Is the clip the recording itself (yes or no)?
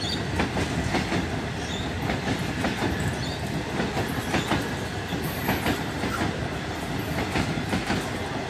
yes